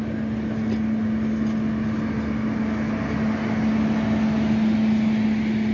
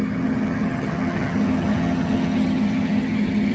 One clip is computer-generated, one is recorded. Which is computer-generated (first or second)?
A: second